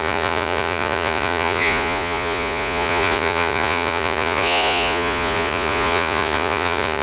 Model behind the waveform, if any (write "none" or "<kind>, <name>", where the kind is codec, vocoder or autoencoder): vocoder, Vocos